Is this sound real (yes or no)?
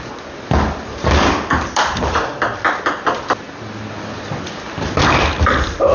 yes